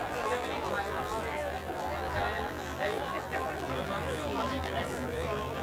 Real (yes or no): no